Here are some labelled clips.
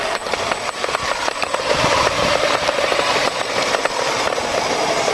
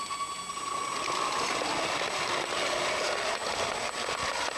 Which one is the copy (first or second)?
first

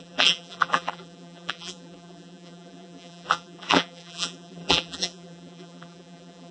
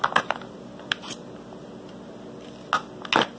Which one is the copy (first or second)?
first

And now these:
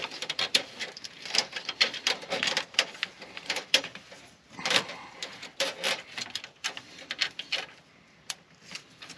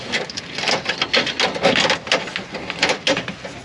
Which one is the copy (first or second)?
first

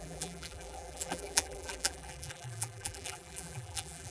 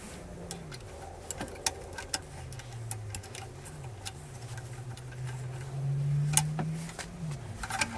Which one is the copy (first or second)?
first